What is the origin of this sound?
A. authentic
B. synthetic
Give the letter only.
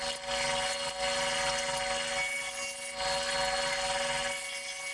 A